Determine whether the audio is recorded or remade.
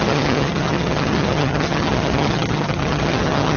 remade